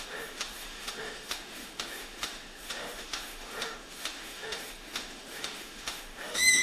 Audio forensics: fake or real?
fake